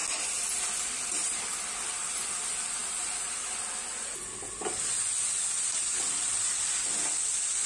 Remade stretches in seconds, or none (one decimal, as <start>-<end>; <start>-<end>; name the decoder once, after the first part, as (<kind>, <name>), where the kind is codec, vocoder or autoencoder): none